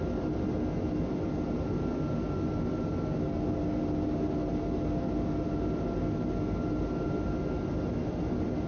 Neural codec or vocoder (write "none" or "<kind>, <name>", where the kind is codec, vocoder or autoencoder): none